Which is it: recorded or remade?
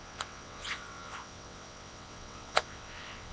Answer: remade